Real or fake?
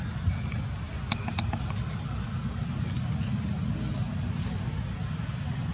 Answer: real